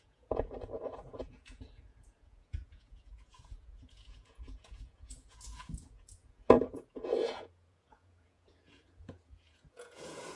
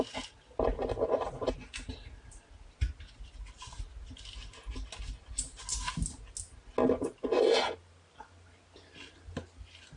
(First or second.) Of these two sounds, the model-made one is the first